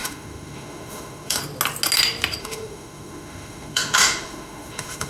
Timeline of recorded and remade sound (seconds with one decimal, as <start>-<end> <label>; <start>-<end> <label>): 0.0-1.4 remade; 1.4-2.4 recorded; 2.4-5.1 remade